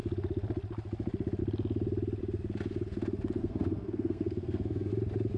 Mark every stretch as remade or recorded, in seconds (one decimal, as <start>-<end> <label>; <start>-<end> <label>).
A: 0.0-3.4 recorded; 3.4-4.9 remade; 4.9-5.4 recorded